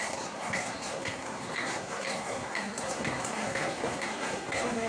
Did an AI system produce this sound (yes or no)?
yes